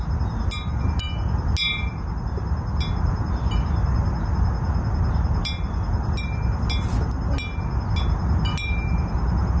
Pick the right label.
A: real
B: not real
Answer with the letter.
A